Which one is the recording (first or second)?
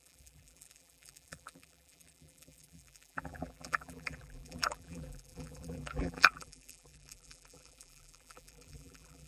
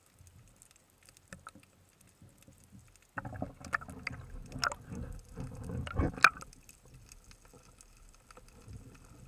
second